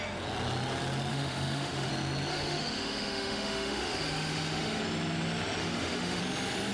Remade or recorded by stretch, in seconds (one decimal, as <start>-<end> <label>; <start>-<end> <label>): 0.0-1.1 recorded; 1.1-1.9 remade; 1.9-2.3 recorded; 2.3-4.8 remade; 4.8-5.6 recorded; 5.6-6.2 remade; 6.2-6.7 recorded